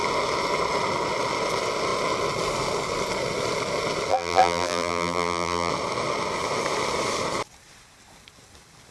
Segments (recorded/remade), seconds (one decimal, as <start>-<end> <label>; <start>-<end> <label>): 0.0-4.1 recorded; 4.1-5.7 remade; 5.7-8.9 recorded